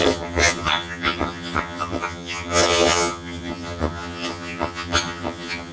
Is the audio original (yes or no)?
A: no